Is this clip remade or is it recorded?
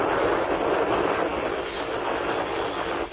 recorded